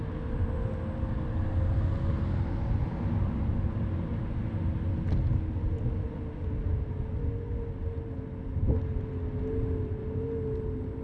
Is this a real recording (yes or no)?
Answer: yes